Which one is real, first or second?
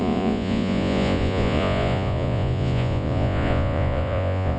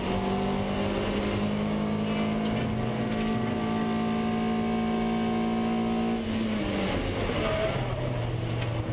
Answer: second